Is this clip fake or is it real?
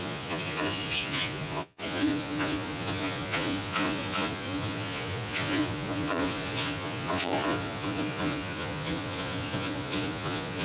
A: fake